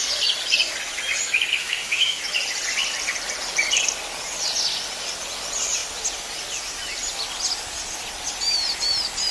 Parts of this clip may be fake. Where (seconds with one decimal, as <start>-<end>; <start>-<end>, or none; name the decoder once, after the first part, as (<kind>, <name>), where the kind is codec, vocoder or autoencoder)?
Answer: 1.6-2.2 (autoencoder, DAC-VAE)